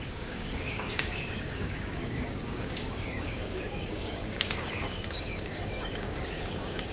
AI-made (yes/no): yes